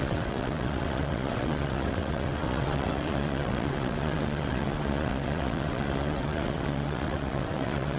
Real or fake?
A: fake